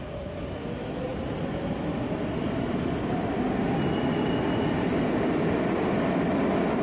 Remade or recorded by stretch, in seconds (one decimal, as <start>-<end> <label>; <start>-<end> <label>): 0.0-6.8 recorded